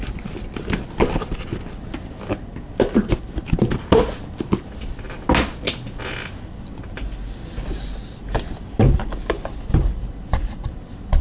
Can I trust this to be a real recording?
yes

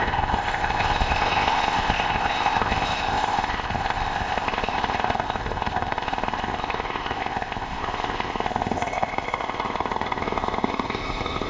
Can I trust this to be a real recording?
no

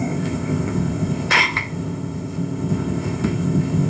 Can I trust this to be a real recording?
no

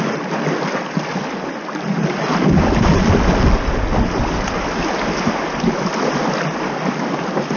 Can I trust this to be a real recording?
yes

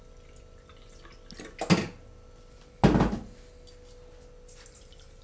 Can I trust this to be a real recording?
yes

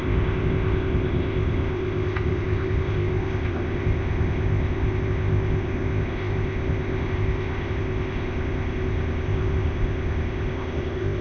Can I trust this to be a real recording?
no